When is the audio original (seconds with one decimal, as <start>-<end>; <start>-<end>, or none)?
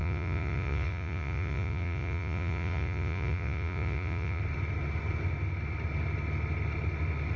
4.4-7.4